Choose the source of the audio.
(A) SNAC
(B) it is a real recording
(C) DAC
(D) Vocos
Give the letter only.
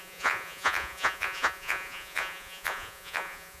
D